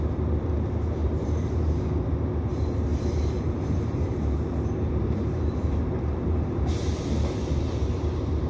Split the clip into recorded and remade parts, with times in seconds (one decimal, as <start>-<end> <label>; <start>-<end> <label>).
0.0-1.0 recorded; 1.0-1.8 remade; 1.8-2.9 recorded; 2.9-8.0 remade; 8.0-8.5 recorded